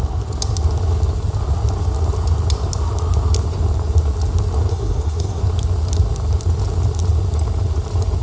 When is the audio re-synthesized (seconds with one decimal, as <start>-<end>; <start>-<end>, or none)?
4.7-5.4